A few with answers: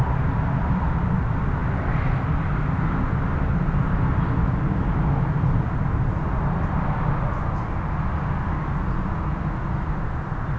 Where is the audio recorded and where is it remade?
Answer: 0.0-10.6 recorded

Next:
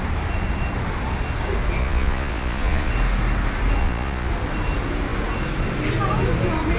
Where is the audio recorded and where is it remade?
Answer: 0.0-1.8 recorded; 1.8-2.9 remade; 2.9-3.8 recorded; 3.8-4.3 remade; 4.3-6.8 recorded

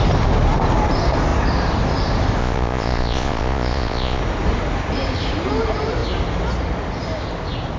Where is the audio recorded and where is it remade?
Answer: 0.0-2.4 recorded; 2.4-4.2 remade; 4.2-7.8 recorded

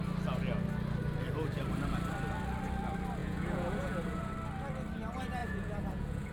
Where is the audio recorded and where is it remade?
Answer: 0.0-3.2 recorded; 3.2-4.2 remade; 4.2-5.4 recorded; 5.4-6.3 remade

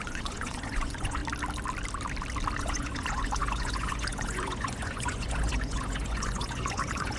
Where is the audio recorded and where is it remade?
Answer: 0.0-1.2 remade; 1.2-2.6 recorded; 2.6-7.2 remade

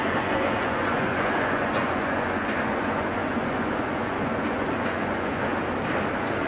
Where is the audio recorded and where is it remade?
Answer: 0.0-5.5 remade; 5.5-6.1 recorded; 6.1-6.5 remade

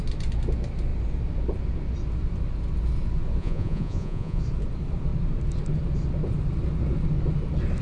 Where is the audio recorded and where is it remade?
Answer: 0.0-3.4 recorded; 3.4-4.4 remade; 4.4-7.8 recorded